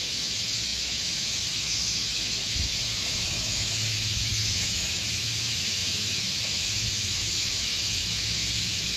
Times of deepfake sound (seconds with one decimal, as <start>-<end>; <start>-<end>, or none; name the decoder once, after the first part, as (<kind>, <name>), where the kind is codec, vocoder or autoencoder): 0.0-9.0 (autoencoder, DAC-VAE)